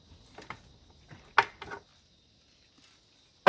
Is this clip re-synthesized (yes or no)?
no